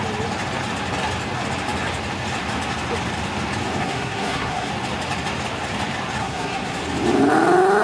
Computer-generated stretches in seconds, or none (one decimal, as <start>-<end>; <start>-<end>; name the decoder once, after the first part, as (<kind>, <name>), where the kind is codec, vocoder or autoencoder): 3.8-4.7 (codec, SNAC); 6.2-6.8